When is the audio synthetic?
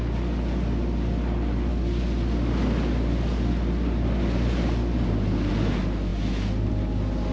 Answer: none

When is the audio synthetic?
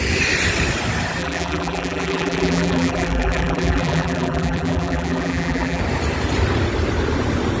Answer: 1.2-5.8 (vocoder, BigVGAN v2)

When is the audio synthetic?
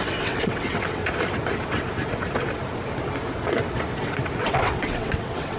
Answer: 0.0-1.0 (vocoder, WaveNeXt); 4.4-5.6